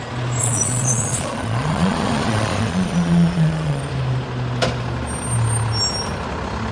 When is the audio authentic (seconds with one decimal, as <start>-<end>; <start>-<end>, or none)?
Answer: 0.0-0.4; 3.8-6.7